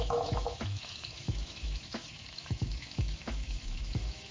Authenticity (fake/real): fake